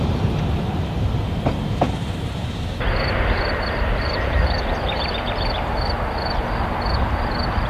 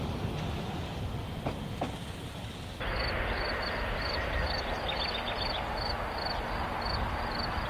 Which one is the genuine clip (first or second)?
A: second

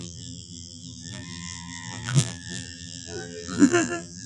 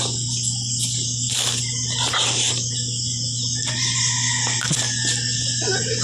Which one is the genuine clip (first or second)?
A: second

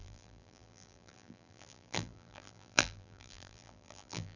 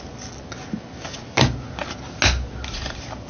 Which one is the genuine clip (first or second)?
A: second